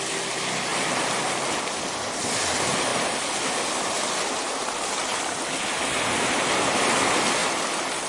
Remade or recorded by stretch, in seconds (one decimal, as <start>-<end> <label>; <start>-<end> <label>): 0.0-0.7 recorded; 0.7-1.6 remade; 1.6-2.9 recorded; 2.9-4.5 remade; 4.5-7.4 recorded; 7.4-8.1 remade